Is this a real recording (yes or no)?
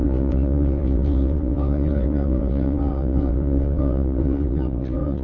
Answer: no